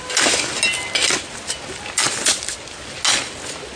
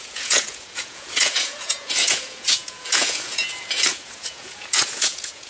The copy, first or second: second